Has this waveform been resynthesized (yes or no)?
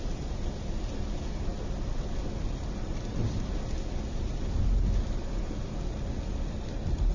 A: no